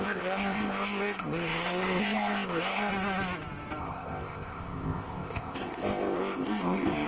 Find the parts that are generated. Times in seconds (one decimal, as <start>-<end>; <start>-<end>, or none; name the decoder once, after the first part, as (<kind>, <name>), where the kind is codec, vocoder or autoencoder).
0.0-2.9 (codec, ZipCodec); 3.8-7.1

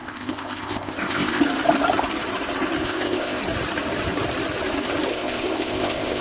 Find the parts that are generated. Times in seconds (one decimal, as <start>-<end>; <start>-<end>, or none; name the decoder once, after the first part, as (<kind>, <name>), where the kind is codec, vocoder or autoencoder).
0.0-1.4 (codec, ZipCodec); 2.8-3.4; 5.1-6.2

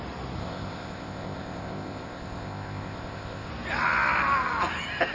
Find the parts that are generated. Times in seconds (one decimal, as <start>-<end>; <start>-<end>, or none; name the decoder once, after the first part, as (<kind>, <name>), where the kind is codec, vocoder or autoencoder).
0.4-3.5 (codec, ZipCodec)